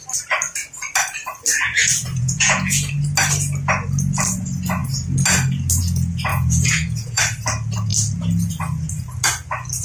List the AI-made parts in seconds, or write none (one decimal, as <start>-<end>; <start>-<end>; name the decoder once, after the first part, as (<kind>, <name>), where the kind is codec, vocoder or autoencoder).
1.8-2.9 (vocoder, Vocos); 6.3-7.2

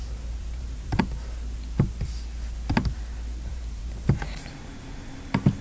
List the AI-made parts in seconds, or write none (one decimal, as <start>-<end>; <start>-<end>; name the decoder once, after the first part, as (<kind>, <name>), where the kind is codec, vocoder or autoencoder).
0.4-1.0 (vocoder, BigVGAN v2); 3.5-4.6

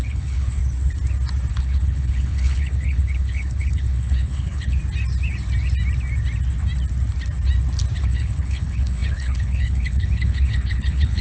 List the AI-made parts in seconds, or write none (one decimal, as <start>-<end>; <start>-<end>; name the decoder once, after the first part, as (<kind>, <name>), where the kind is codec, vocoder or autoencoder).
0.0-0.6 (codec, HILCodec); 1.5-4.8; 8.0-11.2

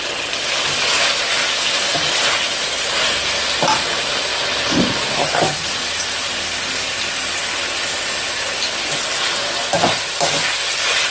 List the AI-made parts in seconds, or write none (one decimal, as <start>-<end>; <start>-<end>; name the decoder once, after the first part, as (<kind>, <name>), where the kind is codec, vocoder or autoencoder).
none

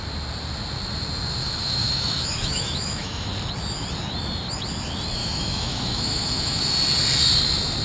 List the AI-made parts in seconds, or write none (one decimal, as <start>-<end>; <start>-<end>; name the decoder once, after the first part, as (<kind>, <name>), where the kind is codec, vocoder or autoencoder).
1.4-3.3 (autoencoder, DAC-VAE); 5.2-6.6